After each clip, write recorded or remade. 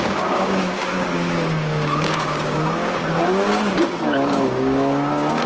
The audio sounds remade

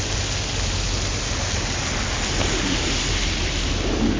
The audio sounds recorded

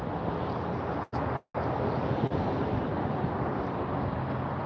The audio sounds recorded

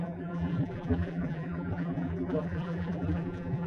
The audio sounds remade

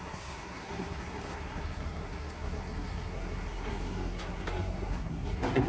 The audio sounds remade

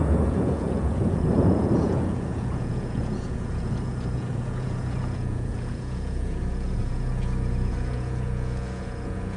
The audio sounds remade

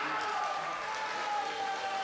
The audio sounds recorded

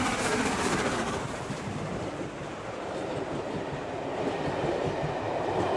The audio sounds recorded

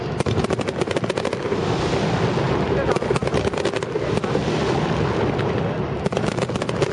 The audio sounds recorded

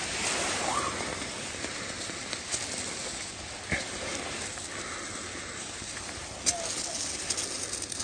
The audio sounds recorded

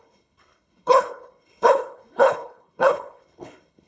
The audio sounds remade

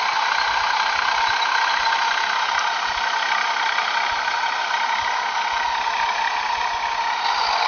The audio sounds recorded